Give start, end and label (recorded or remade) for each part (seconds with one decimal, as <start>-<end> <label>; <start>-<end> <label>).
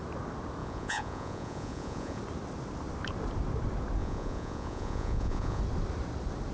0.0-0.6 recorded; 0.6-2.2 remade; 2.2-4.0 recorded; 4.0-5.6 remade; 5.6-6.5 recorded